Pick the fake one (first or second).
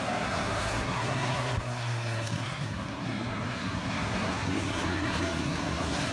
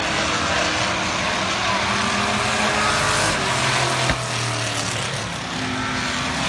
first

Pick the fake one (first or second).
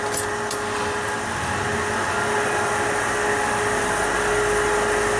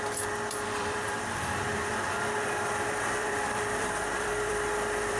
second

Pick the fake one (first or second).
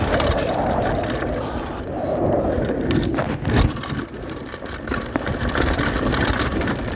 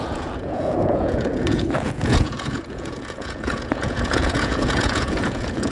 second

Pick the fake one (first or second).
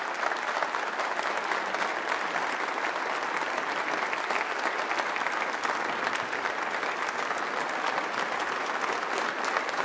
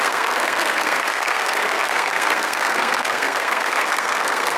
second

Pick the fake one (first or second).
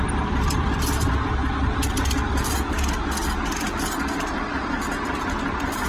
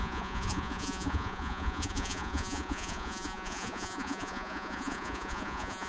second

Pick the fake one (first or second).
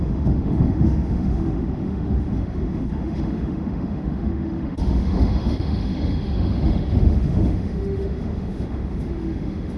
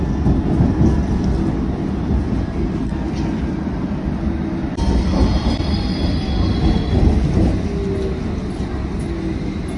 first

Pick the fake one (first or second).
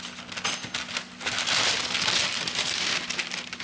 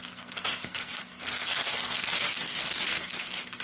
second